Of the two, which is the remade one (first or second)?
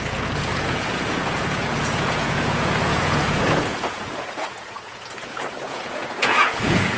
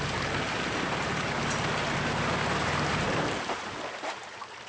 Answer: first